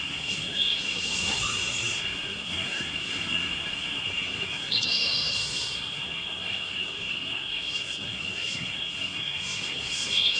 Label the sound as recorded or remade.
remade